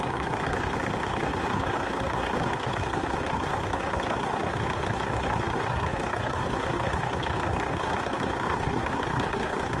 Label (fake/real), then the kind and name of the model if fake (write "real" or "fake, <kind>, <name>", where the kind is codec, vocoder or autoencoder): fake, codec, SNAC